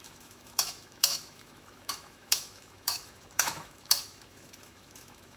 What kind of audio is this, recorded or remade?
remade